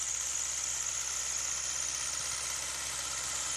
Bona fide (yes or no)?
yes